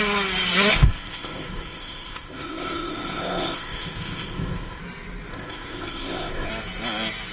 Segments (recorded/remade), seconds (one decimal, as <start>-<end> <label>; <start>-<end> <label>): 0.0-0.7 recorded; 0.7-4.8 remade; 4.8-5.3 recorded; 5.3-6.5 remade; 6.5-7.3 recorded